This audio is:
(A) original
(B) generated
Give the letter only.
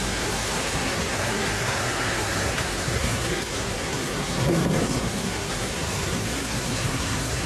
B